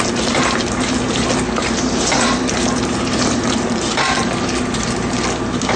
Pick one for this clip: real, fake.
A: real